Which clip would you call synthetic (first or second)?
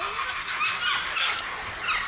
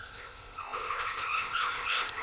second